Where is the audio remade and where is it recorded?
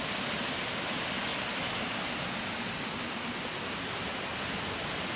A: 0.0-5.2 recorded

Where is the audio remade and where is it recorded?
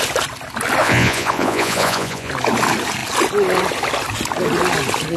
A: 0.0-0.8 recorded; 0.8-2.3 remade; 2.3-5.2 recorded